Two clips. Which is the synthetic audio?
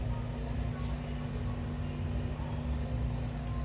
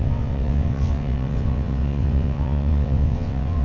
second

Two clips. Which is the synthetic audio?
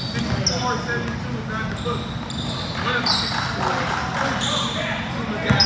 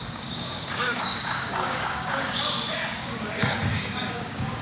second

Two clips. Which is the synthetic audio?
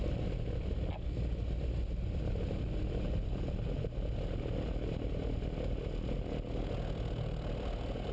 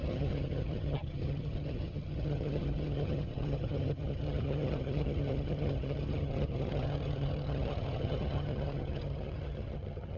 second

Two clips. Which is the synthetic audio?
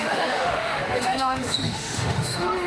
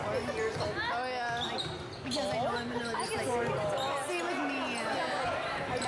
first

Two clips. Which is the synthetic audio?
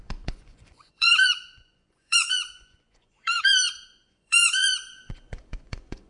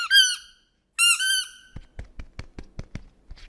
first